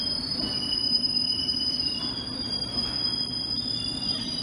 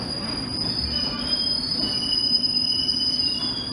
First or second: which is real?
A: second